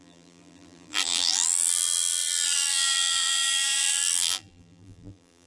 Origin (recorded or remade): remade